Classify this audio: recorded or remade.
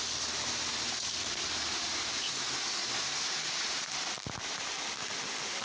recorded